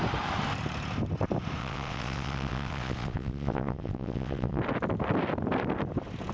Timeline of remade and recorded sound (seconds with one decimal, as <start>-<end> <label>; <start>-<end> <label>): 0.0-1.6 recorded; 1.6-4.6 remade; 4.6-6.3 recorded